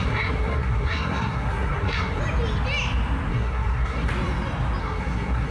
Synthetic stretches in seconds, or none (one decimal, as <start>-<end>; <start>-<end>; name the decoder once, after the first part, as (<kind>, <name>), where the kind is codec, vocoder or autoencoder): 0.0-2.2 (codec, SNAC); 3.3-4.1; 4.8-5.5